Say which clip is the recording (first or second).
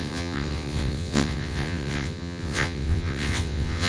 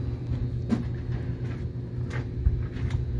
second